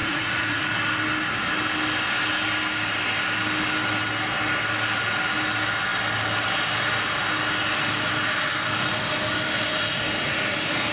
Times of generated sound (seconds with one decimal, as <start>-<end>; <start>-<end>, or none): 0.0-0.6